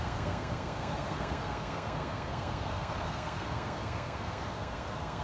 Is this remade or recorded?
remade